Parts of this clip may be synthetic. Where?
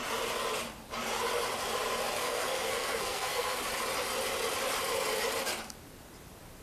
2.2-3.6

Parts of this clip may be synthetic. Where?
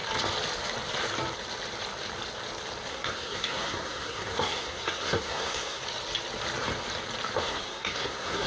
2.9-5.8; 7.4-8.5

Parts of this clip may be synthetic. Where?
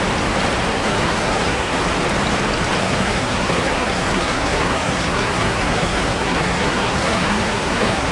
0.7-1.8; 2.8-8.1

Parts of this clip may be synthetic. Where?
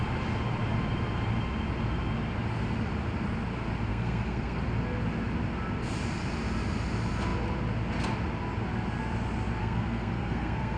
3.9-4.6; 9.6-10.8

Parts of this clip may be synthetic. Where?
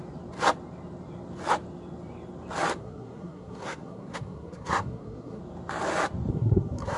2.8-5.4; 6.3-7.0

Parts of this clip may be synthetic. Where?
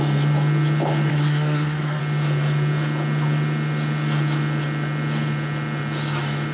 1.1-2.0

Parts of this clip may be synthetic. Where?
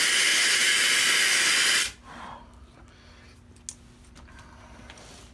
none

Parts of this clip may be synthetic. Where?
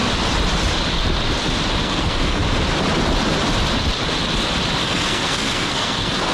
1.8-2.4; 4.8-6.3